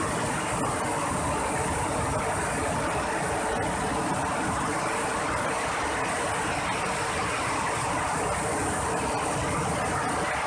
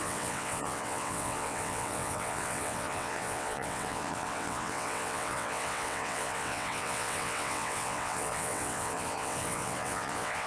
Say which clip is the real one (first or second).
first